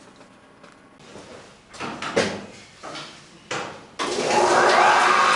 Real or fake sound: real